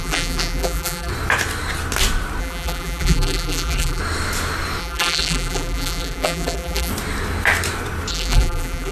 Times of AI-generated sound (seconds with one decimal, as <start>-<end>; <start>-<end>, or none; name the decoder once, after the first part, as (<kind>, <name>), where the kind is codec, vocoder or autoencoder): 0.0-1.1 (vocoder, BigVGAN v2); 2.4-4.0; 4.8-6.9; 8.1-8.9